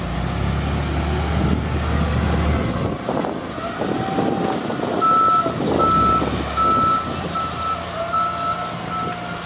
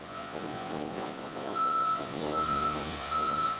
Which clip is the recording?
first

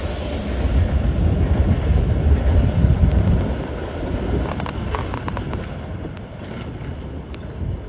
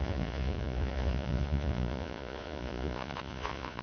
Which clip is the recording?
first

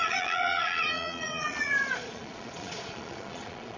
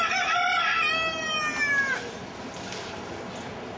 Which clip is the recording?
second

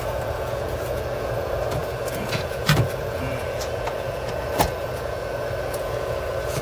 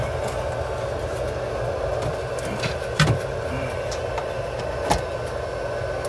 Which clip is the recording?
second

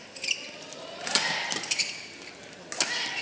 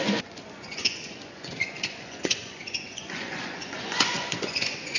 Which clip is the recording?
first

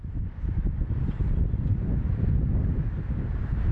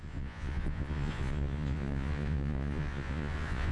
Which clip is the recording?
first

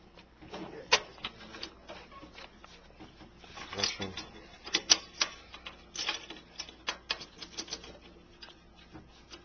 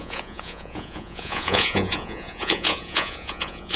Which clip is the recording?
first